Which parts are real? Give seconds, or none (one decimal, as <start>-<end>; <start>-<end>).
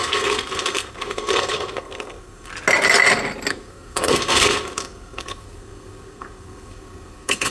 2.5-3.5